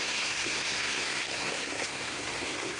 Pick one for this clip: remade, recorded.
remade